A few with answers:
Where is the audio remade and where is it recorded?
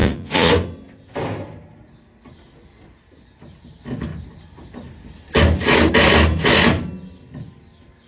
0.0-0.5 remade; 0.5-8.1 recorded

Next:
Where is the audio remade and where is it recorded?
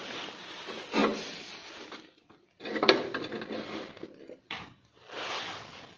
0.0-6.0 recorded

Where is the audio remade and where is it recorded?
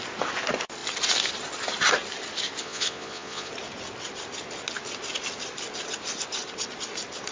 0.0-2.6 recorded; 2.6-3.5 remade; 3.5-7.3 recorded